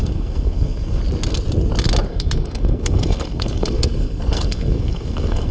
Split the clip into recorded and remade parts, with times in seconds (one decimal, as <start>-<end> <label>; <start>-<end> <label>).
0.0-1.0 remade; 1.0-2.1 recorded; 2.1-5.5 remade